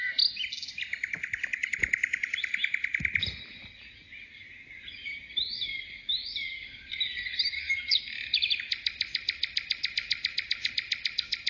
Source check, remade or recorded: recorded